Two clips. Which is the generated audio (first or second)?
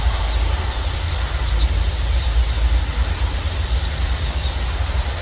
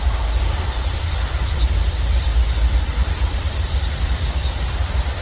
second